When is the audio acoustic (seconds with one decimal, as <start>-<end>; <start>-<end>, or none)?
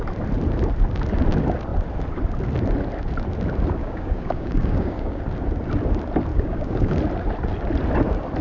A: 0.0-3.8; 5.2-6.3; 7.0-8.4